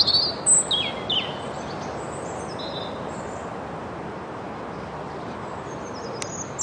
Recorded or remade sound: recorded